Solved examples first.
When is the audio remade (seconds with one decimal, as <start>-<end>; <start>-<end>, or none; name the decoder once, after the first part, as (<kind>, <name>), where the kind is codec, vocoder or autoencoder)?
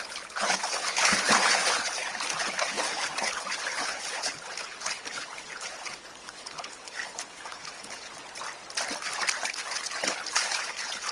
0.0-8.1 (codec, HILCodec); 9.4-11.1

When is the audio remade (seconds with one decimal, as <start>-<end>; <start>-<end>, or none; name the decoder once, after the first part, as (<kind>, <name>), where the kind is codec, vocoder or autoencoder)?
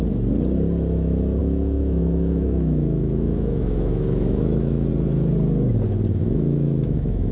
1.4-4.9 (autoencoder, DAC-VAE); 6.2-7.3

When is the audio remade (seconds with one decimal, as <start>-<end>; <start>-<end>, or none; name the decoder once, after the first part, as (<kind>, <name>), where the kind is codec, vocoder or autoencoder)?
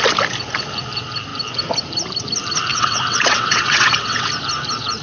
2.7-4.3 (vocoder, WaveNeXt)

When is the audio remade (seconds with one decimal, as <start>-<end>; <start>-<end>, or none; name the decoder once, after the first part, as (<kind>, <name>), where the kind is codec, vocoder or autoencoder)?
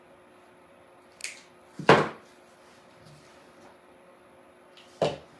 none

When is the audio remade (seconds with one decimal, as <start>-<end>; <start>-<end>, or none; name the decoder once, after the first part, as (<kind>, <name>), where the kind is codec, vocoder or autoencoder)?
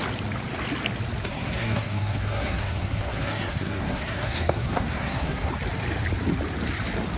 1.2-5.5 (codec, SNAC)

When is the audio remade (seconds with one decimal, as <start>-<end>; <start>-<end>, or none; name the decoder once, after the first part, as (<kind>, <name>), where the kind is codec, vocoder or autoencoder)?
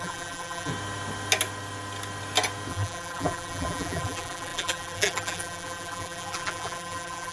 0.0-0.7 (vocoder, BigVGAN v2); 2.7-7.3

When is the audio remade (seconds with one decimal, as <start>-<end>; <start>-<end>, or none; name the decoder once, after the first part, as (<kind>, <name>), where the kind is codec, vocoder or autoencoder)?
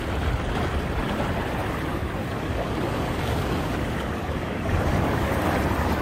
1.9-5.3 (codec, DAC)